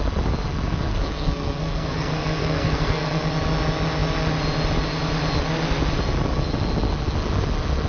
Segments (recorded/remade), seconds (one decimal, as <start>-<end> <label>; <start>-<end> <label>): 0.0-0.9 recorded; 0.9-3.3 remade; 3.3-7.9 recorded